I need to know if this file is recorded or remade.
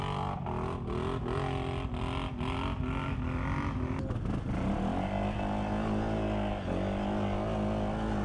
recorded